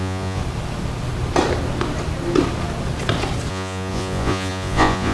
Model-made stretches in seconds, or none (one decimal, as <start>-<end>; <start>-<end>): 0.0-0.4; 3.5-5.1